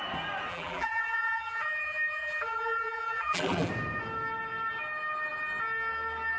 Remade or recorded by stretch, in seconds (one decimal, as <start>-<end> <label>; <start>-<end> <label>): 0.0-0.5 recorded; 0.5-3.7 remade; 3.7-6.4 recorded